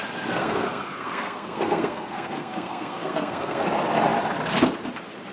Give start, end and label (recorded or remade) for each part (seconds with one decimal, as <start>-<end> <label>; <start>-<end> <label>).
0.0-0.4 recorded; 0.4-3.6 remade; 3.6-5.3 recorded